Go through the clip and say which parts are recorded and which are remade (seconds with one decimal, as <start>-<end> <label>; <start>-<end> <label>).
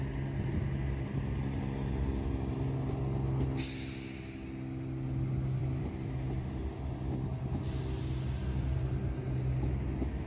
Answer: 0.0-5.6 recorded; 5.6-6.6 remade; 6.6-10.3 recorded